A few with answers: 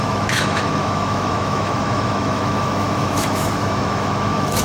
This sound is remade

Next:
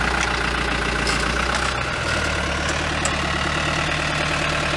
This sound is recorded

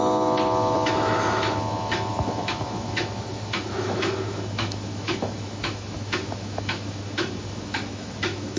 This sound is remade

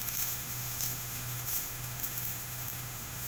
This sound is remade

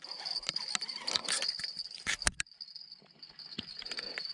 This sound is recorded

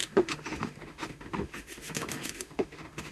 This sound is remade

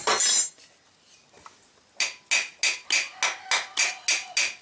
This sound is recorded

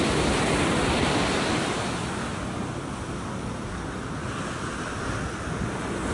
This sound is recorded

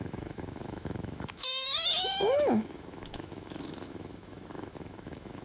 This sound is remade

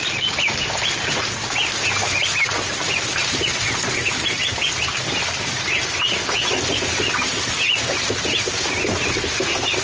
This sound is recorded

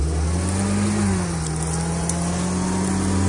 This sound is recorded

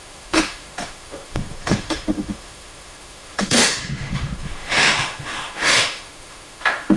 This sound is remade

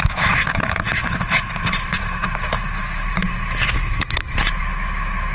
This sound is remade